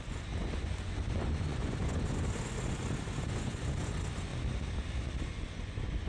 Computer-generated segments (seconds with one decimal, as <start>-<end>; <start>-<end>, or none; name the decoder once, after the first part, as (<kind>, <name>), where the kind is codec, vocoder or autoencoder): 0.0-4.3 (vocoder, Vocos); 5.2-6.1